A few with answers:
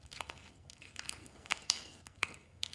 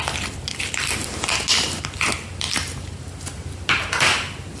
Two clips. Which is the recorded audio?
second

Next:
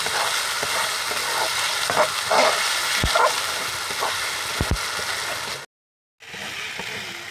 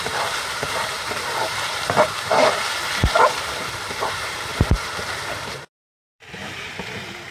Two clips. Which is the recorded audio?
first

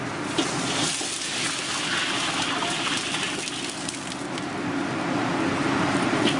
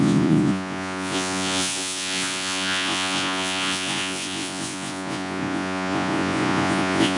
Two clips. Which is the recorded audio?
first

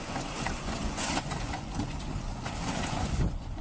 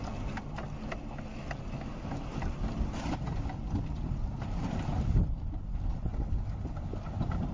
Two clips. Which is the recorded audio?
second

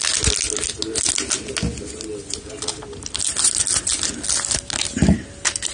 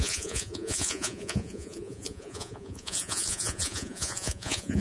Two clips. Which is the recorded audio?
first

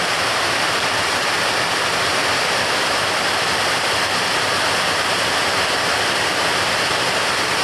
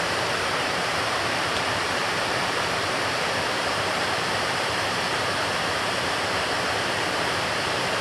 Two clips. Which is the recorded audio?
first